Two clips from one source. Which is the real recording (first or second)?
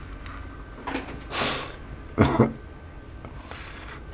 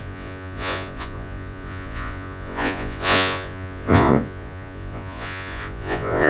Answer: first